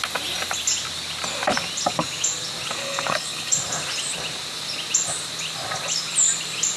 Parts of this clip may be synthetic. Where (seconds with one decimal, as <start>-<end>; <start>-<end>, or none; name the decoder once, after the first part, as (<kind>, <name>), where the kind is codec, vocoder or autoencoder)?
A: 2.8-3.5 (codec, HILCodec)